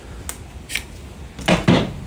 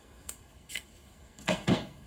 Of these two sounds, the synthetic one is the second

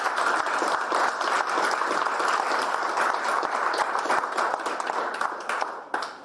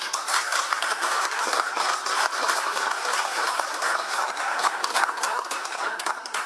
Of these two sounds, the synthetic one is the second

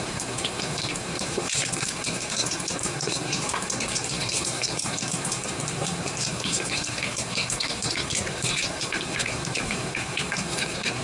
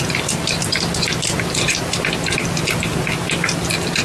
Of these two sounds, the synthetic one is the first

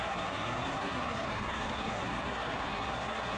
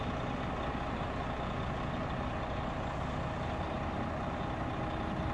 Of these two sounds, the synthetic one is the first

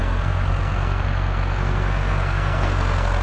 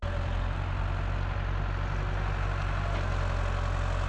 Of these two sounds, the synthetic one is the first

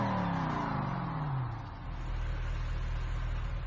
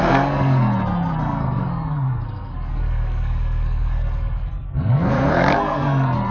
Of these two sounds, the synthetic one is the second